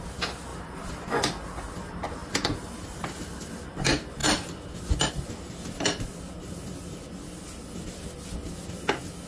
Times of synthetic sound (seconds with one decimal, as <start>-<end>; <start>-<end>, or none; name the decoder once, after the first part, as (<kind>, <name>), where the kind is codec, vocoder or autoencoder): 0.5-1.1 (vocoder, BigVGAN v2); 2.2-3.1